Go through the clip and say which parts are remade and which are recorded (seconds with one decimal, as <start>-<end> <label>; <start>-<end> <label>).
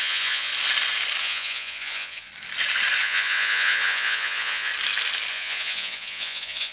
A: 0.0-0.5 remade; 0.5-1.2 recorded; 1.2-2.3 remade; 2.3-3.0 recorded; 3.0-4.7 remade; 4.7-5.3 recorded; 5.3-6.7 remade